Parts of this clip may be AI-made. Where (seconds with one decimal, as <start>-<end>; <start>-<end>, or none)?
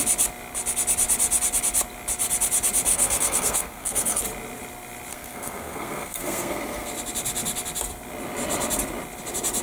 2.9-4.2; 5.1-6.9